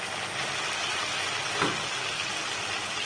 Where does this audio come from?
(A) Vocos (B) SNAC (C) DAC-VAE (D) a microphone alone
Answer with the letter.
D